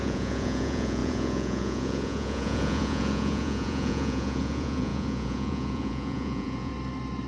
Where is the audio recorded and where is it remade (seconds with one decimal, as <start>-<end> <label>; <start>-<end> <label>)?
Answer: 0.0-6.7 remade; 6.7-7.3 recorded